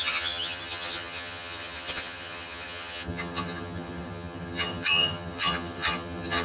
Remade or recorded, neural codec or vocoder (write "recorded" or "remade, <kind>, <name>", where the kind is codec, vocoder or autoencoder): remade, vocoder, HiFi-GAN